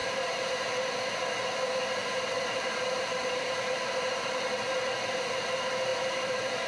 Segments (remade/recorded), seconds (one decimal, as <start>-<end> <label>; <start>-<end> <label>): 0.0-0.9 remade; 0.9-2.0 recorded; 2.0-3.7 remade; 3.7-5.9 recorded; 5.9-6.7 remade